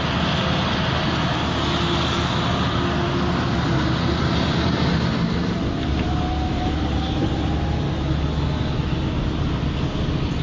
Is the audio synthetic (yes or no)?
no